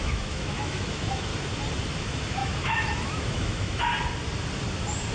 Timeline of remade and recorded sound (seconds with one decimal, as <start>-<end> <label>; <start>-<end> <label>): 0.0-1.3 remade; 1.3-2.0 recorded; 2.0-3.9 remade; 3.9-5.1 recorded